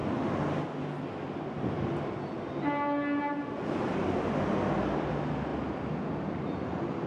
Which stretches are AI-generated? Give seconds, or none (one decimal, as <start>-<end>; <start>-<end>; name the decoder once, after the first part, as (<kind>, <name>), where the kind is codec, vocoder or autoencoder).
none